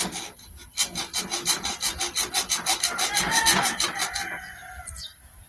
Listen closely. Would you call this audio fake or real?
real